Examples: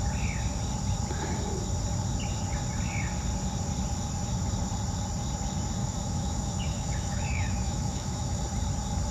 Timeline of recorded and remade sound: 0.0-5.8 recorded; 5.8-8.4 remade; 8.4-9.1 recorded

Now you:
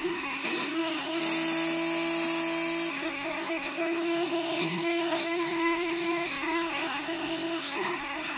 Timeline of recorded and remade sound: 0.0-1.2 remade; 1.2-2.9 recorded; 2.9-8.4 remade

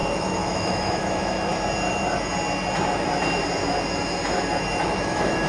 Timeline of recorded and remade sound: 0.0-1.5 remade; 1.5-4.8 recorded; 4.8-5.5 remade

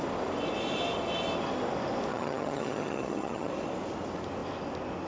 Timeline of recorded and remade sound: 0.0-2.1 recorded; 2.1-3.5 remade; 3.5-5.1 recorded

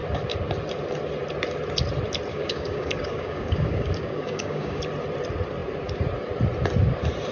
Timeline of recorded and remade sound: 0.0-2.3 recorded; 2.3-4.8 remade; 4.8-7.3 recorded

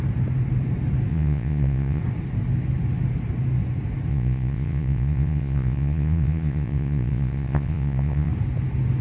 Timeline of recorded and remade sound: 0.0-1.1 recorded; 1.1-2.0 remade; 2.0-4.1 recorded; 4.1-8.3 remade; 8.3-9.0 recorded

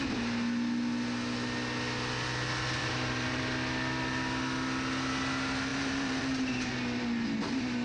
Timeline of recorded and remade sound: 0.0-2.8 recorded; 2.8-3.4 remade; 3.4-5.7 recorded; 5.7-6.7 remade; 6.7-7.8 recorded